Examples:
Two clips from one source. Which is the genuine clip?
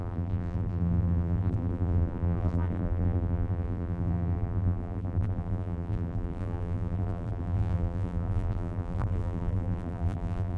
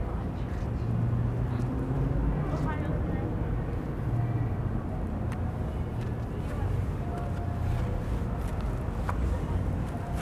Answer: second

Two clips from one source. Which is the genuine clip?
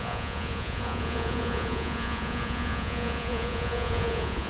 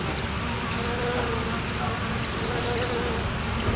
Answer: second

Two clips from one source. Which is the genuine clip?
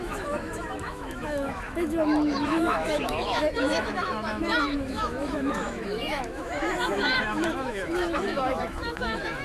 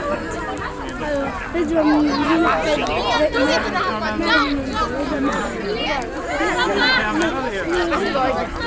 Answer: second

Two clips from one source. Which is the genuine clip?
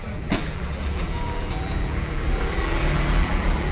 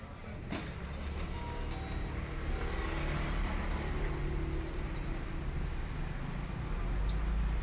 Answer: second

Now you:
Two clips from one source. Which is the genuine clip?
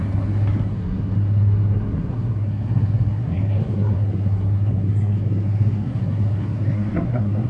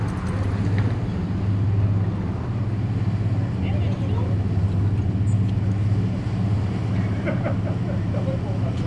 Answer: second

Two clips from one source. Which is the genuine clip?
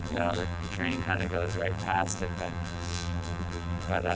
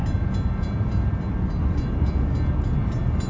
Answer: second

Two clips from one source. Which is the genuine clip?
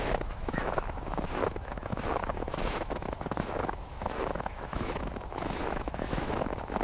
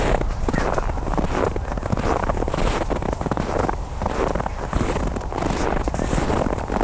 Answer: second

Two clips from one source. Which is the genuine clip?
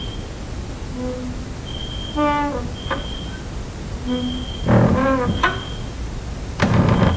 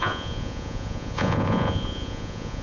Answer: first